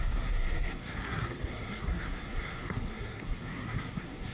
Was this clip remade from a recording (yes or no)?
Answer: yes